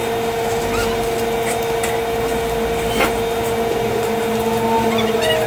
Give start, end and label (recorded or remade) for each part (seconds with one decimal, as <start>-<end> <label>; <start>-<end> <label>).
0.0-5.5 recorded